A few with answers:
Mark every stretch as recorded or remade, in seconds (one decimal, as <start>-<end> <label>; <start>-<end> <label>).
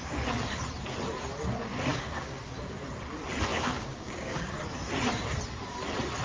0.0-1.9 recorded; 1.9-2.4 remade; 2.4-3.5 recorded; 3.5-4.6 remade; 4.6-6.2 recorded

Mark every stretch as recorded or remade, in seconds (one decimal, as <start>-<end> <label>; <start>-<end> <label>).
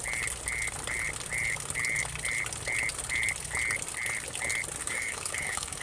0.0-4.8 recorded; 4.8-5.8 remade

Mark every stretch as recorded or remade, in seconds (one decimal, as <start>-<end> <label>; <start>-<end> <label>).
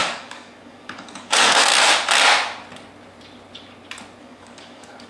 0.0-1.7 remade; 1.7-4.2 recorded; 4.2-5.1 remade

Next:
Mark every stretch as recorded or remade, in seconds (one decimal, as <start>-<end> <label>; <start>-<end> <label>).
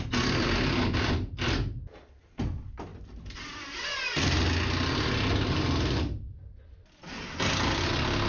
0.0-8.3 recorded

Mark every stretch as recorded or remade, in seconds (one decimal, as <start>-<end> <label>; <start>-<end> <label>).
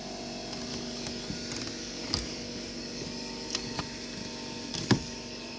0.0-0.7 recorded; 0.7-1.3 remade; 1.3-1.8 recorded; 1.8-3.8 remade; 3.8-4.7 recorded; 4.7-5.6 remade